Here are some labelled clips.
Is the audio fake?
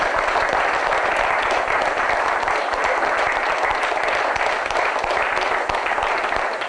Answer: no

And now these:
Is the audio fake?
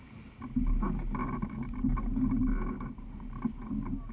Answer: no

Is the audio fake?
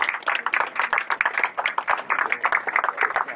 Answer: no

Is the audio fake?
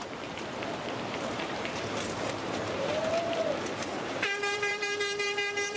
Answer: yes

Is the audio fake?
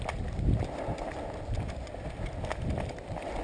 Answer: no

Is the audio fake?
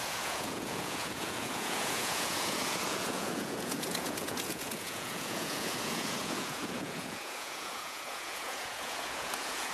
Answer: yes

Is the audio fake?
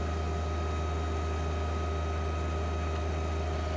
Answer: no